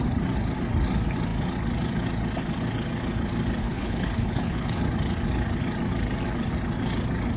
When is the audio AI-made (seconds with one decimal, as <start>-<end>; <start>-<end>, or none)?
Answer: 3.6-4.8